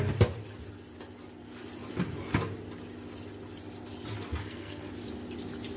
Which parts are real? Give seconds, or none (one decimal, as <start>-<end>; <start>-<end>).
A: 0.0-4.4; 4.9-5.8